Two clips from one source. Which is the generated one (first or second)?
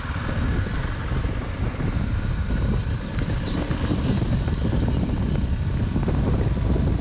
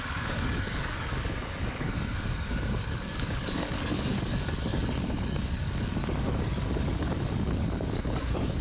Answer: second